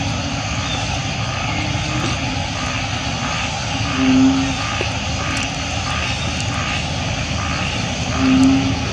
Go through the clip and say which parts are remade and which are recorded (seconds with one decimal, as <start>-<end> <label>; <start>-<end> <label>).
0.0-8.9 recorded